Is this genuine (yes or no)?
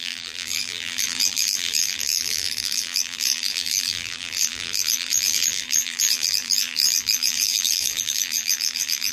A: no